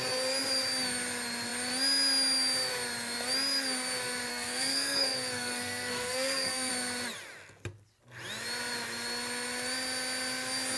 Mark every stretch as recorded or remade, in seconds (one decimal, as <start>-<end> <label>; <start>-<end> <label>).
0.0-4.3 recorded; 4.3-6.7 remade; 6.7-10.8 recorded